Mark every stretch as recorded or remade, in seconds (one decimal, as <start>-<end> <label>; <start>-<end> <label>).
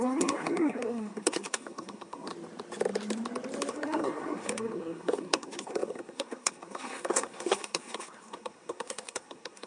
0.0-2.3 remade; 2.3-3.7 recorded; 3.7-9.7 remade